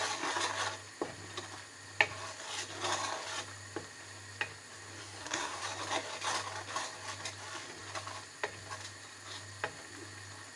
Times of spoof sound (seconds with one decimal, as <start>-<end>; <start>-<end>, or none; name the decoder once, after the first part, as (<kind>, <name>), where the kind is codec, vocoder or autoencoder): 5.0-5.6 (codec, SNAC)